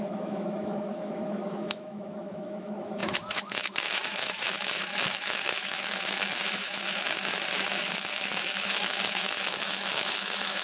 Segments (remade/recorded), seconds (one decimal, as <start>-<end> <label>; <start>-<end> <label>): 0.0-10.6 remade